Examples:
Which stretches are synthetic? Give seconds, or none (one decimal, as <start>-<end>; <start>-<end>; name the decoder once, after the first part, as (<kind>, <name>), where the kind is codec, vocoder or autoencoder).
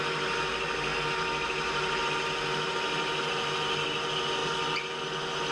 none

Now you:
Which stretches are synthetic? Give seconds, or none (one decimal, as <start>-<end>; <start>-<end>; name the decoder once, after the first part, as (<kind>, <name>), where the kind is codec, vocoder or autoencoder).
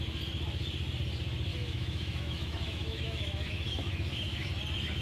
1.5-4.5 (autoencoder, DAC-VAE)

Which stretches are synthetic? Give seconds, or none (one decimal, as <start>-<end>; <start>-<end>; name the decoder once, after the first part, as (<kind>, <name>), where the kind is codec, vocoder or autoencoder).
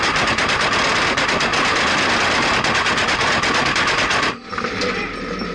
none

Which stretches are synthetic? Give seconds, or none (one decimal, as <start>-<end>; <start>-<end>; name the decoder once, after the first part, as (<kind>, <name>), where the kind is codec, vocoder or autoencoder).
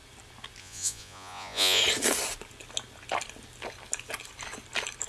0.6-1.8 (vocoder, Vocos)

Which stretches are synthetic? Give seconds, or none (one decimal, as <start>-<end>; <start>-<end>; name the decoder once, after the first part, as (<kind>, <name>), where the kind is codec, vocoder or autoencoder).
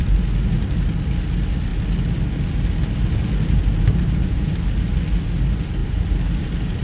5.8-6.8 (vocoder, BigVGAN v2)